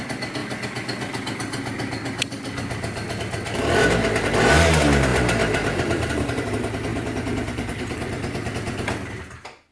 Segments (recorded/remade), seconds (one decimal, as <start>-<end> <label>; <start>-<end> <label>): 0.0-6.9 recorded; 6.9-8.5 remade; 8.5-9.7 recorded